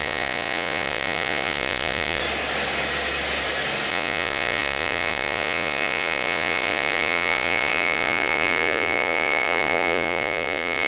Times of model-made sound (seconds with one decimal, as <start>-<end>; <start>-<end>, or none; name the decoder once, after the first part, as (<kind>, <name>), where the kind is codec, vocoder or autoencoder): 0.0-2.2 (vocoder, Vocos); 3.9-10.9